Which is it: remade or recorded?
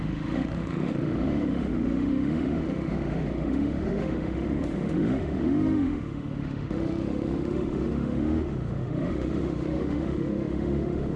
remade